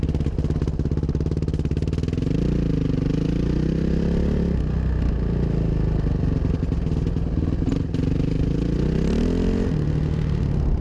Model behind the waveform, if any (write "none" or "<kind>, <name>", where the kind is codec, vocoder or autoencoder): none